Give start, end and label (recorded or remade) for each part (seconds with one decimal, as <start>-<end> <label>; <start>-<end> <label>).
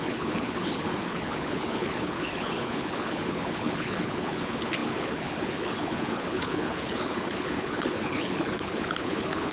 0.0-9.5 remade